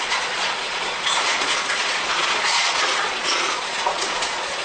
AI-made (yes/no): yes